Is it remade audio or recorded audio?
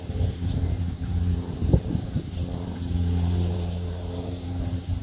remade